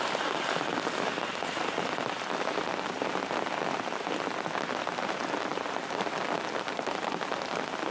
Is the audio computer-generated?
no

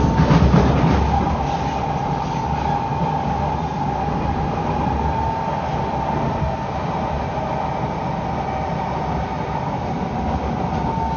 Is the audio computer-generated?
no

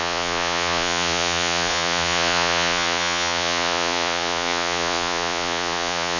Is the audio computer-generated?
yes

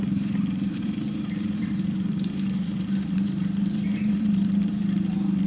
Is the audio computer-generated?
yes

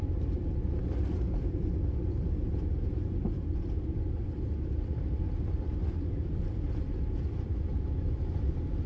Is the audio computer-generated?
yes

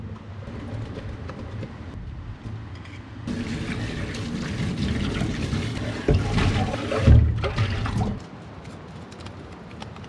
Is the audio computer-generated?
no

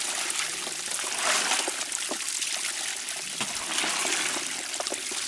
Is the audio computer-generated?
no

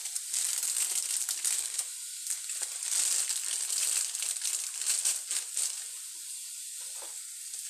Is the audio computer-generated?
no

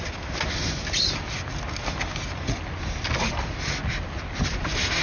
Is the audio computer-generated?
no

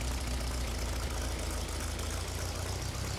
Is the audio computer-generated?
no